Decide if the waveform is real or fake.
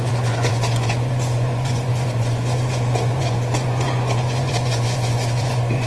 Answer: fake